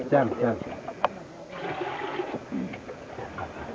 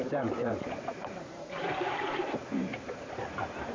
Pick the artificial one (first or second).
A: second